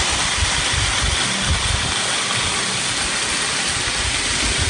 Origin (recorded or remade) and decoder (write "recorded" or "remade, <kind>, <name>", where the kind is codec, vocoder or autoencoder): recorded